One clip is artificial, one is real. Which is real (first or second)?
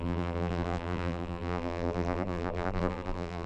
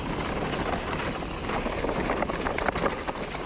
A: second